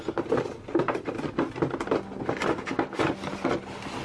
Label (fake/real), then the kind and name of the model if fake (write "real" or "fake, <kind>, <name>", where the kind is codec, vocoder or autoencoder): real